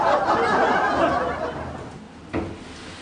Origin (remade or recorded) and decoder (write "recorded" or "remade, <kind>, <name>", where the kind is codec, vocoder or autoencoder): recorded